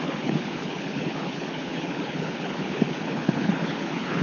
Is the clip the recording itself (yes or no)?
no